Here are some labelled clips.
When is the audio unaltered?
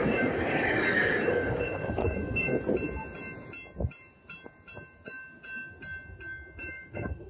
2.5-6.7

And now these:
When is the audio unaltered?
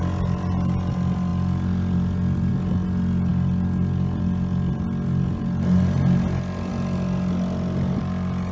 0.0-8.5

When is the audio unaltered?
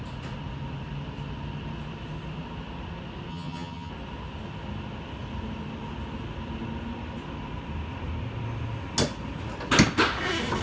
0.0-3.3; 3.9-10.6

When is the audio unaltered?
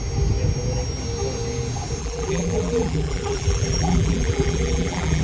0.0-2.0